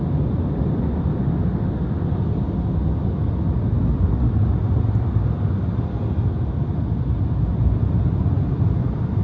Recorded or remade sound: recorded